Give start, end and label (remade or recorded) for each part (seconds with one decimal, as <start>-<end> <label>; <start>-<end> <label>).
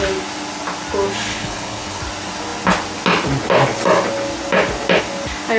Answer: 0.0-1.3 recorded; 1.3-2.0 remade; 2.0-5.6 recorded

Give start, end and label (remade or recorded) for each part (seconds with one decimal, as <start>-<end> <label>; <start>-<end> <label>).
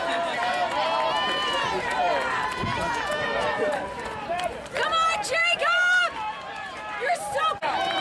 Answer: 0.0-1.4 recorded; 1.4-4.7 remade; 4.7-5.4 recorded; 5.4-7.4 remade; 7.4-8.0 recorded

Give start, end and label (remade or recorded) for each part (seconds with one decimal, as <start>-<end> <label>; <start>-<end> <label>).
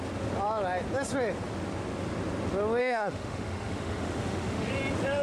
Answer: 0.0-2.8 recorded; 2.8-4.7 remade; 4.7-5.2 recorded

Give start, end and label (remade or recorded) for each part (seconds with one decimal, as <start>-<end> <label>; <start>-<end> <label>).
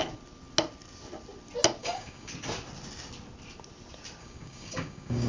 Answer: 0.0-1.8 recorded; 1.8-2.3 remade; 2.3-4.2 recorded; 4.2-5.3 remade